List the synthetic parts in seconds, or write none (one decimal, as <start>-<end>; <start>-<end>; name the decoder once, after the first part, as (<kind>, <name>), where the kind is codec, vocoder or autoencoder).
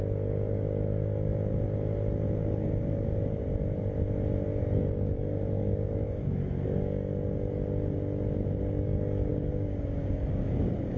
0.0-1.3 (codec, DAC); 2.4-3.4; 4.6-7.1; 8.6-11.0